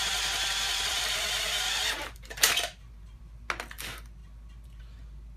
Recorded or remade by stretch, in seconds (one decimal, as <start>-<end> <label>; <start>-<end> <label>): 0.0-3.2 remade; 3.2-5.4 recorded

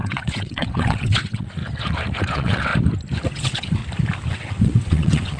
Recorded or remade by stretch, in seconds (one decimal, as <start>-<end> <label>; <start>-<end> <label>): 0.0-1.6 remade; 1.6-2.2 recorded; 2.2-2.7 remade; 2.7-3.3 recorded; 3.3-3.8 remade; 3.8-4.3 recorded; 4.3-5.4 remade

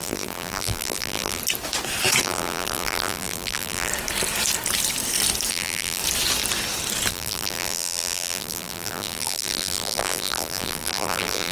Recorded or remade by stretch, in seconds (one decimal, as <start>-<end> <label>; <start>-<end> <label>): 0.0-1.4 remade; 1.4-2.2 recorded; 2.2-3.9 remade; 3.9-5.5 recorded; 5.5-6.0 remade; 6.0-7.1 recorded; 7.1-11.5 remade

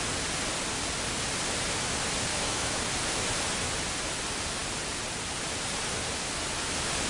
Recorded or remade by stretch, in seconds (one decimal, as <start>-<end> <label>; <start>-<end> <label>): 0.0-2.3 recorded; 2.3-2.8 remade; 2.8-7.1 recorded

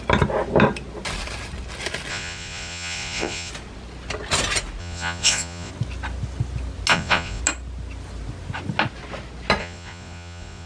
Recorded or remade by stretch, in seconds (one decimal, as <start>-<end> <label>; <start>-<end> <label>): 0.0-2.1 recorded; 2.1-3.5 remade; 3.5-4.8 recorded; 4.8-5.7 remade; 5.7-6.9 recorded; 6.9-7.4 remade; 7.4-9.6 recorded; 9.6-10.7 remade

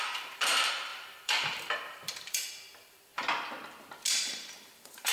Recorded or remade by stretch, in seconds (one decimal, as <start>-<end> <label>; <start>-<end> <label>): 0.0-3.1 remade; 3.1-4.1 recorded; 4.1-5.1 remade

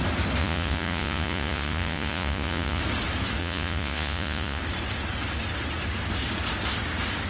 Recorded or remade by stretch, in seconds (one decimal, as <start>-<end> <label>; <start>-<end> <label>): 0.0-0.4 recorded; 0.4-2.8 remade; 2.8-3.4 recorded; 3.4-4.6 remade; 4.6-7.3 recorded